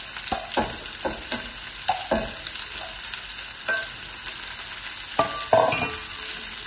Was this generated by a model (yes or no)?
no